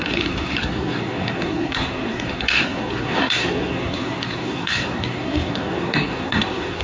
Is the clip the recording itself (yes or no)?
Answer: no